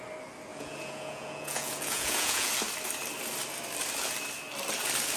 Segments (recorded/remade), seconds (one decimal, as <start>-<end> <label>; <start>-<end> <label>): 0.0-0.5 recorded; 0.5-2.5 remade; 2.5-5.2 recorded